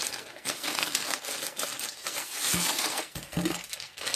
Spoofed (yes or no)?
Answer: yes